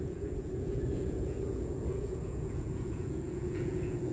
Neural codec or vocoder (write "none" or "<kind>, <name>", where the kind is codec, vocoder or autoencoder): vocoder, Vocos